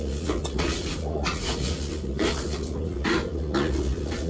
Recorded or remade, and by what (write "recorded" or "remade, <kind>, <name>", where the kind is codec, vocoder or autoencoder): remade, vocoder, Vocos